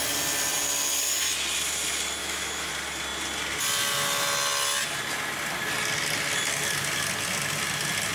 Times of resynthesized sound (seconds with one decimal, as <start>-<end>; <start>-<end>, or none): 2.2-2.7